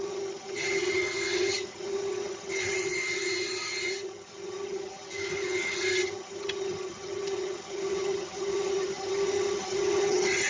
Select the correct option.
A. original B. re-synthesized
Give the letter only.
B